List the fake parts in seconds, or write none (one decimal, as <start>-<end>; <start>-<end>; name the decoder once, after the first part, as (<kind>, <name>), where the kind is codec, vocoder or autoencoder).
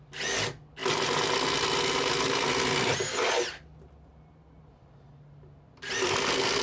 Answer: none